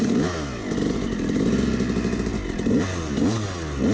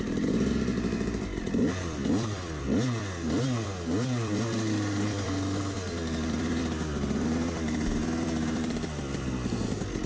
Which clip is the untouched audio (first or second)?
first